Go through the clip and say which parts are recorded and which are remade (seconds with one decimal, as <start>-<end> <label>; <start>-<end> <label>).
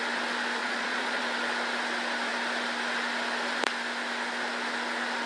0.0-0.6 recorded; 0.6-1.2 remade; 1.2-5.3 recorded